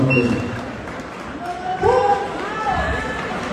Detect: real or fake fake